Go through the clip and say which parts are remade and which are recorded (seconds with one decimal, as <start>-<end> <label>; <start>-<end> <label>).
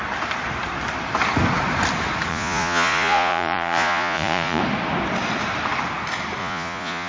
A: 0.0-2.3 recorded; 2.3-4.6 remade; 4.6-6.4 recorded; 6.4-7.1 remade